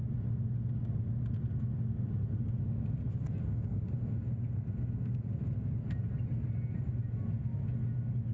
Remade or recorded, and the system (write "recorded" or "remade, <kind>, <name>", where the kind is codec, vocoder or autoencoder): recorded